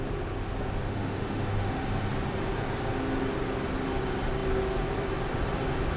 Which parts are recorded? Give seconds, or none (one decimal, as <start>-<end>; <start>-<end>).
0.0-0.8; 1.8-6.0